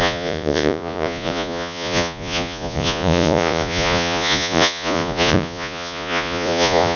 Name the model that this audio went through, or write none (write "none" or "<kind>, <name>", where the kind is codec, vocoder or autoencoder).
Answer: vocoder, Vocos